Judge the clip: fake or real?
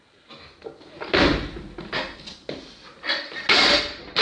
real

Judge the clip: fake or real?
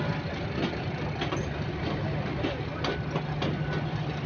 real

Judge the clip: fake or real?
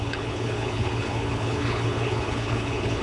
fake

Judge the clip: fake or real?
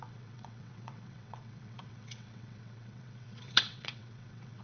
fake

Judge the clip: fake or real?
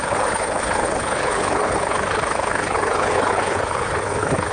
fake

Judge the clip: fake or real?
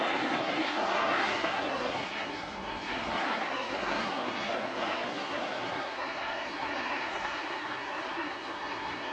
fake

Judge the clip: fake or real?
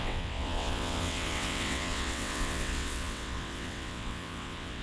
fake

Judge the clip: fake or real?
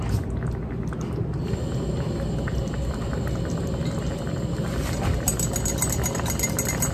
real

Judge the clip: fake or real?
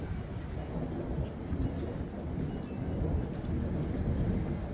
real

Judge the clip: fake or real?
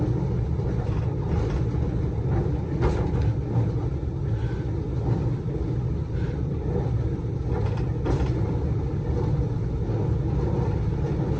real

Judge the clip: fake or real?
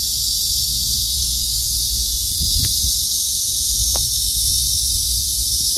fake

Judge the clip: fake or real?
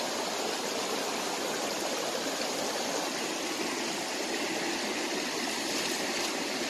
real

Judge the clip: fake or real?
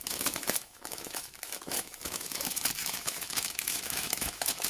fake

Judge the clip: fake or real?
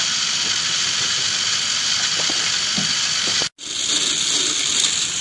real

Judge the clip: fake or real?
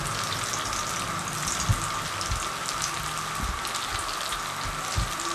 real